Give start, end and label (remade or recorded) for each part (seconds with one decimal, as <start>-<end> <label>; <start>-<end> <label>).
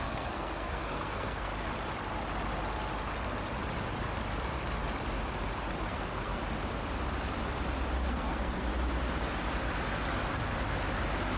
0.0-1.5 remade; 1.5-5.8 recorded; 5.8-6.4 remade; 6.4-8.1 recorded; 8.1-8.7 remade; 8.7-11.4 recorded